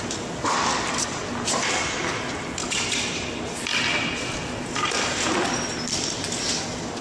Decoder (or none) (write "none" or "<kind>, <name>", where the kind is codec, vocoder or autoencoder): none